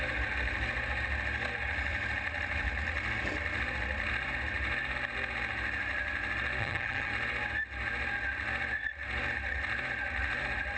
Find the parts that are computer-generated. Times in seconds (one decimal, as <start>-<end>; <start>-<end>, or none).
6.6-7.1